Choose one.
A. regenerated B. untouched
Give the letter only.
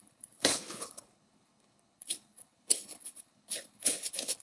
A